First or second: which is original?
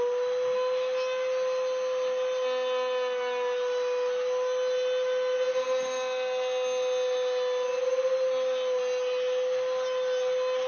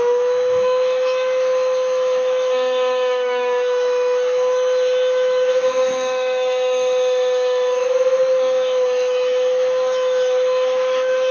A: first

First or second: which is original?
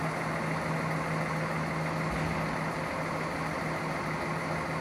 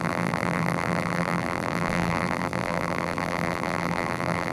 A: first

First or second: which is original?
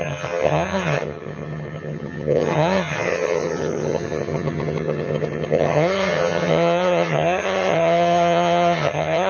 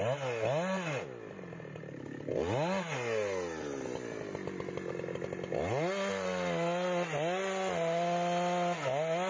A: second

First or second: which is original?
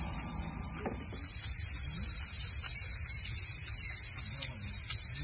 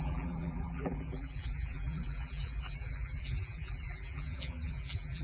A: first